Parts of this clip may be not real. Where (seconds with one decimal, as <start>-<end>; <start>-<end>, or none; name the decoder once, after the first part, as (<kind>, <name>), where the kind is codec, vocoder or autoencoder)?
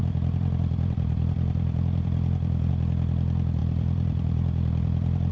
0.0-2.7 (vocoder, BigVGAN v2); 3.6-5.3